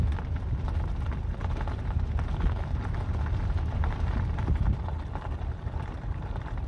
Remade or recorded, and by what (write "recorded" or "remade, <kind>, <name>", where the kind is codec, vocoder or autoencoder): recorded